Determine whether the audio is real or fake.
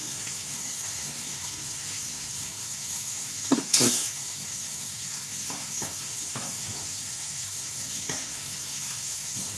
fake